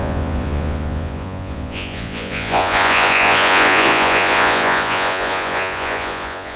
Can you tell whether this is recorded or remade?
remade